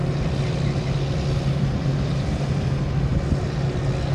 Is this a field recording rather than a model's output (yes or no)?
yes